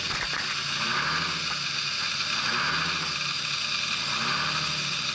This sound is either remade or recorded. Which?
recorded